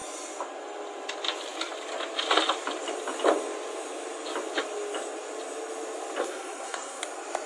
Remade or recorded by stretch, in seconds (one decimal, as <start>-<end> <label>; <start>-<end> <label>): 0.0-6.2 recorded; 6.2-7.0 remade; 7.0-7.5 recorded